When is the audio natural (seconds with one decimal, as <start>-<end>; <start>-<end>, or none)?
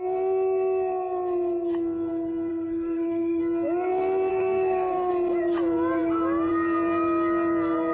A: 0.0-2.5; 3.4-4.3; 5.1-7.9